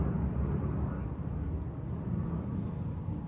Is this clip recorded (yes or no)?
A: yes